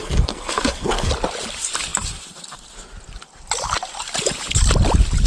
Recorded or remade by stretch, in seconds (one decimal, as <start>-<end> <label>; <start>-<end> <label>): 0.0-1.1 remade; 1.1-5.3 recorded